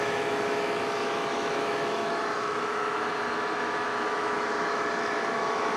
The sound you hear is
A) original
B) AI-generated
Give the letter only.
B